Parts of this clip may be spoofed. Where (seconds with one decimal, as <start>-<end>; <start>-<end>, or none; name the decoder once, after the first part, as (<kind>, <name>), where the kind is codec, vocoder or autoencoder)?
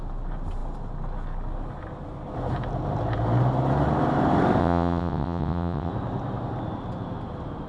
4.6-5.9 (vocoder, WaveNeXt)